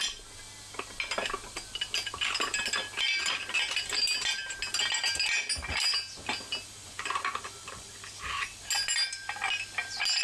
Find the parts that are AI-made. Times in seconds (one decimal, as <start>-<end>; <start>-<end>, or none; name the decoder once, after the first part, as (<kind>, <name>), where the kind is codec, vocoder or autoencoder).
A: 6.8-7.9 (vocoder, Vocos)